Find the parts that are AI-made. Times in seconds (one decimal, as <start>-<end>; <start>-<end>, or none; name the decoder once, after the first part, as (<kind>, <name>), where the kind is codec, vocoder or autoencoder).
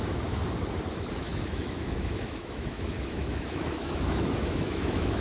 0.0-0.4 (autoencoder, DAC-VAE); 0.9-5.2